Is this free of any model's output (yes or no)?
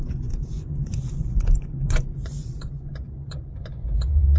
no